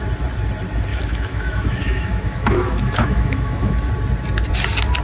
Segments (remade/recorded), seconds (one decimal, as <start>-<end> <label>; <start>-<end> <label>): 0.0-0.9 recorded; 0.9-3.9 remade; 3.9-5.0 recorded